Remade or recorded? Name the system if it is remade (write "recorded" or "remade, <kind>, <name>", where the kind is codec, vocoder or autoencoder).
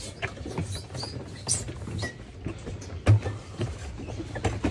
recorded